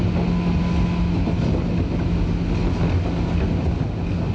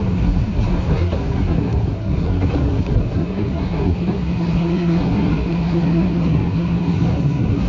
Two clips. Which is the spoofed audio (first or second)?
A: second